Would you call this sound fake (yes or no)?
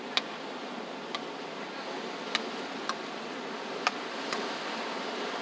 no